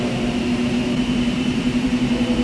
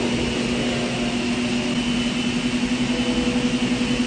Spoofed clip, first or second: first